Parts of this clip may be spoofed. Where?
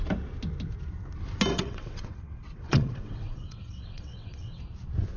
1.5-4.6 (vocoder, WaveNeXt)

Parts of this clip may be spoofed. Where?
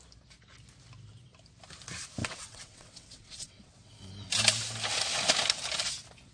2.2-3.9 (vocoder, WaveNeXt)